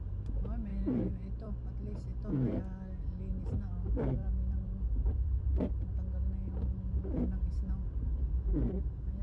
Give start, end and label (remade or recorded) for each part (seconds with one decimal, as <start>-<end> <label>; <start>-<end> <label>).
0.0-0.7 recorded; 0.7-1.5 remade; 1.5-4.2 recorded; 4.2-5.9 remade; 5.9-9.2 recorded